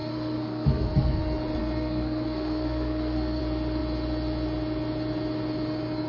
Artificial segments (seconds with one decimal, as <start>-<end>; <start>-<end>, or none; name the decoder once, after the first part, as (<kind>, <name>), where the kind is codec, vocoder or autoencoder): 0.0-1.2 (codec, SNAC); 1.6-3.4